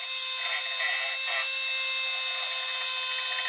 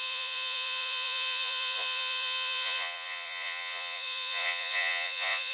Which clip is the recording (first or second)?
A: first